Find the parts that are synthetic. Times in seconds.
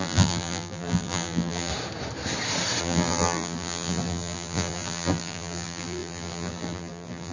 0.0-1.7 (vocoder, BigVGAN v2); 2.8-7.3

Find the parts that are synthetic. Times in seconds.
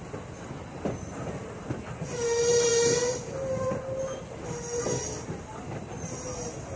none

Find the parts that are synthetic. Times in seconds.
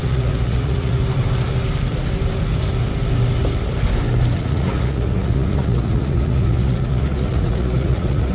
0.0-1.0 (vocoder, Vocos); 4.4-8.3